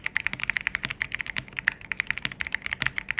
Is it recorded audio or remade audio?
recorded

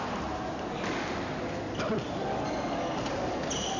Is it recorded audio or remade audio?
recorded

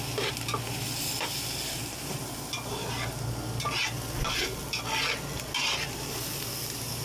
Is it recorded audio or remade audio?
recorded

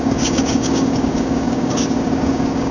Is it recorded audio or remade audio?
remade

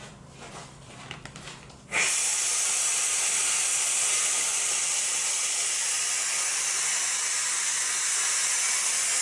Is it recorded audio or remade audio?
recorded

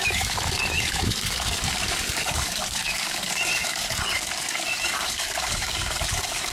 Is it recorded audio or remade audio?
remade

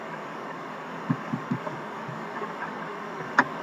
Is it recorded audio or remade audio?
remade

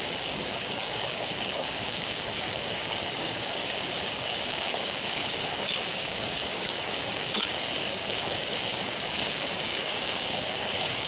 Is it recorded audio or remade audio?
remade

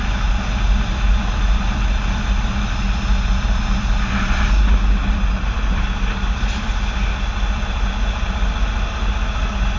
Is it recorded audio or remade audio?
recorded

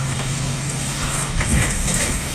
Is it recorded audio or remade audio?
remade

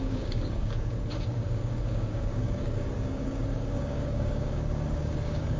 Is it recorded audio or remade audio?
remade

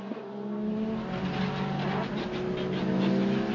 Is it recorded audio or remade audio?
recorded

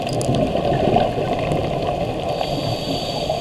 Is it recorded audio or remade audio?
recorded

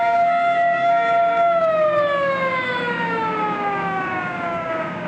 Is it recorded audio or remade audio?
remade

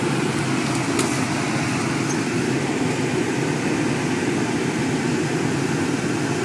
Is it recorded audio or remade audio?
recorded